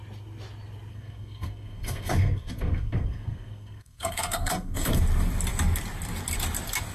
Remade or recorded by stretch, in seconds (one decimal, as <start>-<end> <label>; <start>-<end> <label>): 0.0-0.9 recorded; 0.9-5.0 remade; 5.0-6.9 recorded